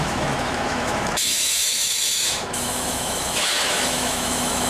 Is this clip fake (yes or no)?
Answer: yes